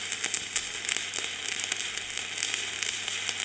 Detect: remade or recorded recorded